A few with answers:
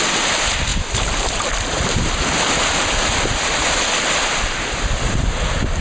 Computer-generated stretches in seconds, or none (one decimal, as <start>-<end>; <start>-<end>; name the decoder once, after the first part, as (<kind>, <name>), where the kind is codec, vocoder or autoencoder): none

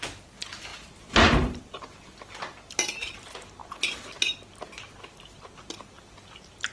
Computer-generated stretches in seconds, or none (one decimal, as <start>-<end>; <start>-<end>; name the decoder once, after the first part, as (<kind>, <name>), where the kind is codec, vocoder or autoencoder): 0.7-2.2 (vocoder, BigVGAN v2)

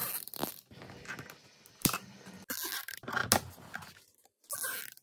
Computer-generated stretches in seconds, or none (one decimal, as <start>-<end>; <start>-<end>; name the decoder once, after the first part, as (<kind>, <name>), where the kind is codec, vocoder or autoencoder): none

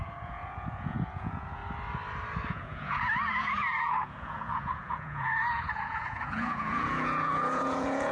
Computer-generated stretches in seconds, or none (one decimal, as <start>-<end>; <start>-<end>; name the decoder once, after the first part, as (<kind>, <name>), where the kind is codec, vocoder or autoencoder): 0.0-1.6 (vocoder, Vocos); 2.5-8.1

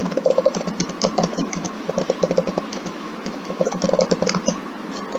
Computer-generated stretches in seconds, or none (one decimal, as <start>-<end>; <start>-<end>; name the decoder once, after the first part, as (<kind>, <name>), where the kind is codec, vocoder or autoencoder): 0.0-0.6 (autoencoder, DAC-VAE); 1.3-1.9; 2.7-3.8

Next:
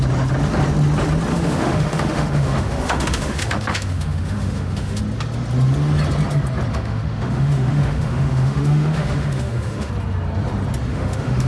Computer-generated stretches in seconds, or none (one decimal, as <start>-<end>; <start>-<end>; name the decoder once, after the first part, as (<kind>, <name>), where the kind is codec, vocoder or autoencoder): 1.3-5.0 (autoencoder, DAC-VAE); 6.7-9.9; 10.9-11.5